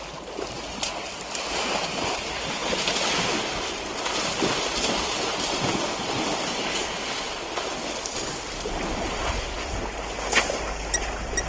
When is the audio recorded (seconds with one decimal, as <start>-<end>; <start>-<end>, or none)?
0.0-11.5